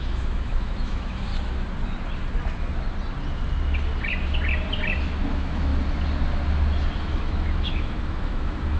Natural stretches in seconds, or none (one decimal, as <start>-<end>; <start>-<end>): 1.3-5.3; 5.7-7.0